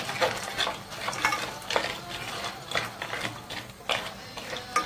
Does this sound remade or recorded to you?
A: recorded